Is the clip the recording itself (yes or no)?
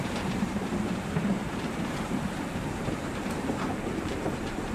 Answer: no